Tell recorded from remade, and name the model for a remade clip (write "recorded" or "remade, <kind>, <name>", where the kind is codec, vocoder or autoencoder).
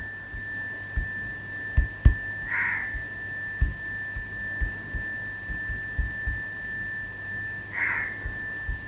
recorded